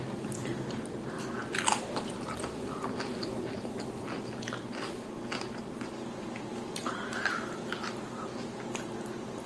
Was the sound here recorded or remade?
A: recorded